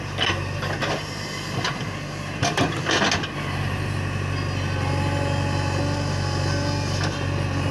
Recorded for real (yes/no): yes